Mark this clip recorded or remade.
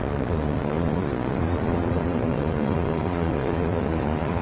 remade